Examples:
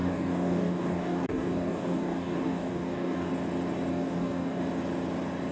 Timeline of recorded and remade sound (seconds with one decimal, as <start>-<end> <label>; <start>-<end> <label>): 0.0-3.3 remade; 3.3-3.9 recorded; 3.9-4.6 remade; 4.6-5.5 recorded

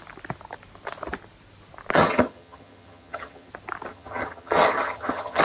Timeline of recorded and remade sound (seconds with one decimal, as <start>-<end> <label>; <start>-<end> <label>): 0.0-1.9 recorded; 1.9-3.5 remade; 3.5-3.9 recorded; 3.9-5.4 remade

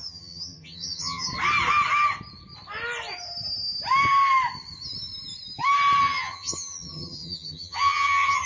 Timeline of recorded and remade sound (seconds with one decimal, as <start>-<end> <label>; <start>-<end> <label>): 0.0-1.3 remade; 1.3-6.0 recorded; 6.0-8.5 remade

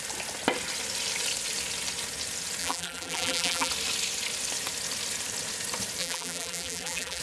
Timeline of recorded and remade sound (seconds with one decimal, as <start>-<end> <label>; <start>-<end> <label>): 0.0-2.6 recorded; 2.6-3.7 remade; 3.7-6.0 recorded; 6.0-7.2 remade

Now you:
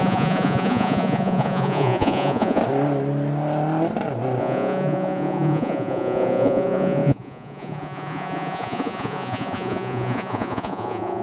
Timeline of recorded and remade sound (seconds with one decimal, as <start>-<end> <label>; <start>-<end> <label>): 0.0-2.6 remade; 2.6-4.4 recorded; 4.4-11.2 remade

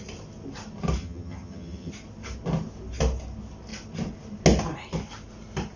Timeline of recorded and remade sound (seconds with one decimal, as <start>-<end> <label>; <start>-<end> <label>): 0.0-1.0 recorded; 1.0-1.9 remade; 1.9-5.8 recorded